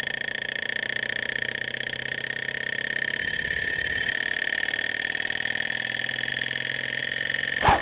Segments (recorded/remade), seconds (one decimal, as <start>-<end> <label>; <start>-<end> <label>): 0.0-3.2 recorded; 3.2-4.1 remade; 4.1-7.8 recorded